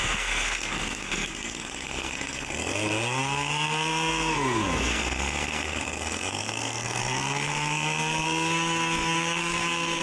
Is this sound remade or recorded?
remade